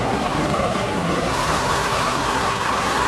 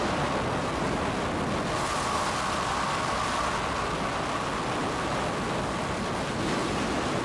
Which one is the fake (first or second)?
first